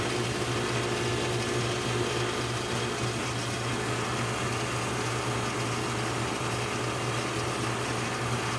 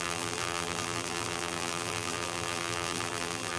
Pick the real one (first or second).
first